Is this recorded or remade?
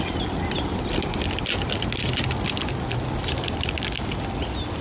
recorded